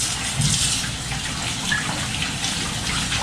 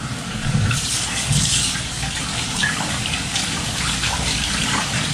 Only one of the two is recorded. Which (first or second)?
first